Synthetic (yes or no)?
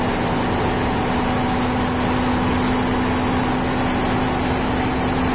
no